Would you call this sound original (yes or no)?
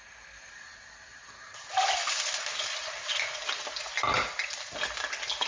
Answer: yes